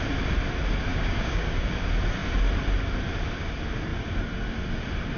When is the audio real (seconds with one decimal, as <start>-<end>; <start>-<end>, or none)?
0.0-0.9; 1.7-5.2